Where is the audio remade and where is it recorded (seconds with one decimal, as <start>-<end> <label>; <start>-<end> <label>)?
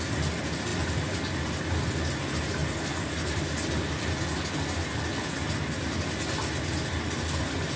0.0-7.8 recorded